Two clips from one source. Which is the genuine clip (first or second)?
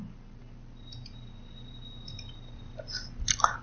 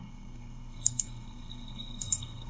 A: first